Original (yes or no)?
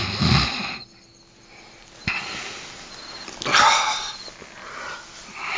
yes